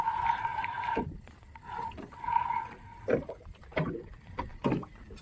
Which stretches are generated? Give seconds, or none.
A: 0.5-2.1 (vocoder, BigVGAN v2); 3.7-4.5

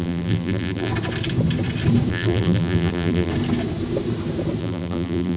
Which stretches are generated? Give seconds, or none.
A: 0.0-0.9 (vocoder, BigVGAN v2); 2.1-3.3; 4.6-5.4

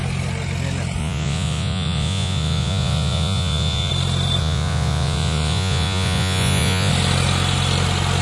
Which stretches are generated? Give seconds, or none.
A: 1.0-3.9 (vocoder, Vocos); 4.4-6.9

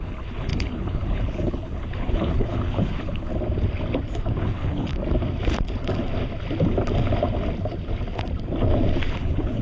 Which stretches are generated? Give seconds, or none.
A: 0.0-3.3 (codec, HILCodec); 4.4-4.9; 9.2-9.6